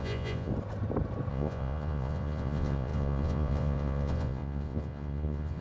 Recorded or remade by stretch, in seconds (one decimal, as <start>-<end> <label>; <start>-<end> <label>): 0.0-0.5 remade; 0.5-1.3 recorded; 1.3-5.6 remade